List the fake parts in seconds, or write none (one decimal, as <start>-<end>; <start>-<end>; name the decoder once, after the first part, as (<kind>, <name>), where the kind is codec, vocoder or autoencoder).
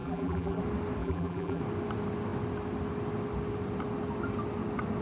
0.0-0.6 (vocoder, BigVGAN v2); 1.0-1.6